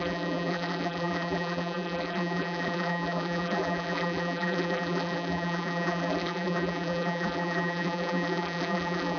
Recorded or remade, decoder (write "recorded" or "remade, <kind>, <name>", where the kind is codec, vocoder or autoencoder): remade, vocoder, BigVGAN v2